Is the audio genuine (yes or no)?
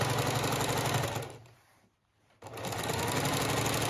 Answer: yes